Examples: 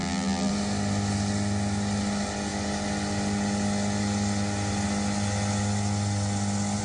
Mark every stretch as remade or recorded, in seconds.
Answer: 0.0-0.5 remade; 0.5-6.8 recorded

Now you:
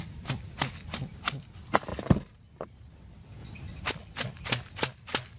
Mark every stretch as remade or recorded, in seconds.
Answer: 0.0-5.4 recorded